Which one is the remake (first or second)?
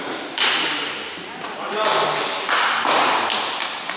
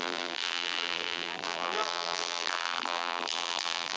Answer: second